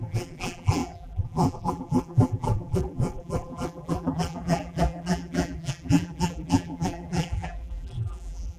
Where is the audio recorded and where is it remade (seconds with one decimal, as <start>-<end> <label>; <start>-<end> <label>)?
0.0-8.6 remade